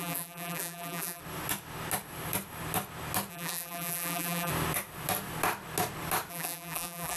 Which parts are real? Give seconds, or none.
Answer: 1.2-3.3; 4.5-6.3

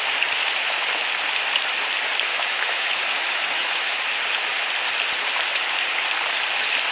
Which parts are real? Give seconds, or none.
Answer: 0.0-0.4; 1.0-2.3; 4.0-6.9

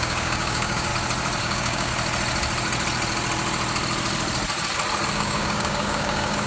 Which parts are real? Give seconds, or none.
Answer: 0.9-1.4; 1.9-5.1

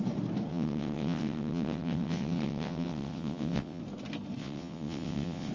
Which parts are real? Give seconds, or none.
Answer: 0.0-0.5; 3.8-4.4

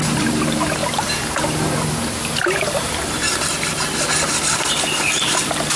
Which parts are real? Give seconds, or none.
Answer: 0.0-5.8

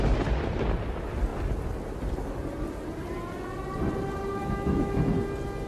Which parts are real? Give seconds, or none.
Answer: 0.0-4.4; 5.0-5.7

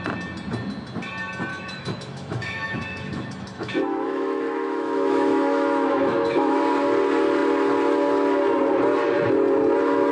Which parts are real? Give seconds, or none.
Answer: 0.0-1.5; 6.6-10.1